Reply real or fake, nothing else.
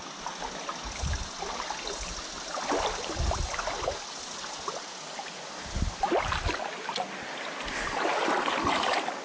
real